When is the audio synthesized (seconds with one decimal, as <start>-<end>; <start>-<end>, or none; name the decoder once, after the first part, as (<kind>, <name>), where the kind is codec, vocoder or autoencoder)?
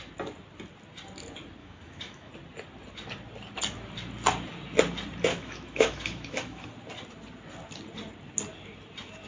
1.6-2.3 (autoencoder, DAC-VAE); 5.3-6.7